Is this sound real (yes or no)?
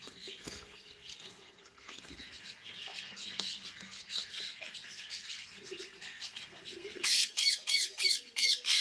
no